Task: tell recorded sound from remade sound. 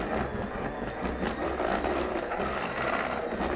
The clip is recorded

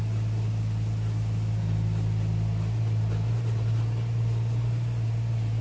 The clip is recorded